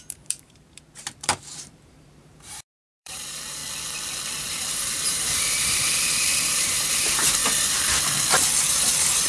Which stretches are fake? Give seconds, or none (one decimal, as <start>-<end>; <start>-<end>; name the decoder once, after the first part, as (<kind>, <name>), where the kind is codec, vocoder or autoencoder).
0.0-3.6 (vocoder, BigVGAN v2); 4.4-7.4; 8.6-9.3